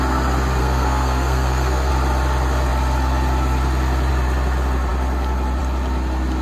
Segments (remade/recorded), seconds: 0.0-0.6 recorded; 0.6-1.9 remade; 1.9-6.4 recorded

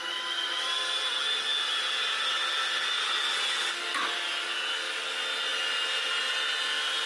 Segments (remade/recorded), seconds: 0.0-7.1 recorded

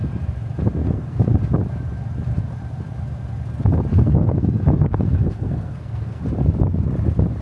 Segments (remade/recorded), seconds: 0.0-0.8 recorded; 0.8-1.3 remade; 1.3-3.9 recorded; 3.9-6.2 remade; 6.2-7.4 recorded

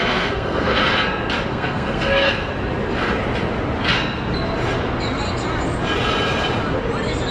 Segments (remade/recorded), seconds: 0.0-0.8 remade; 0.8-1.5 recorded; 1.5-2.5 remade; 2.5-7.3 recorded